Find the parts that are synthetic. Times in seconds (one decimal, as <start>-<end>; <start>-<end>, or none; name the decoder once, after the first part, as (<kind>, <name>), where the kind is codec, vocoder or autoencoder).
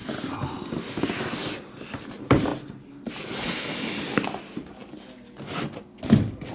none